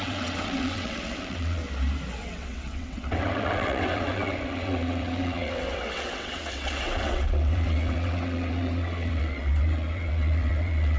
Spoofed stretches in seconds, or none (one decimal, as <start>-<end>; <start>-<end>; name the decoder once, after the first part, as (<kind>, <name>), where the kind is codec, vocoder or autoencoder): 0.0-1.6 (vocoder, WaveNeXt); 2.2-11.0